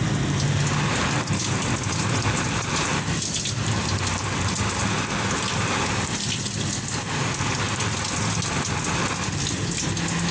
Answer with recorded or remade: recorded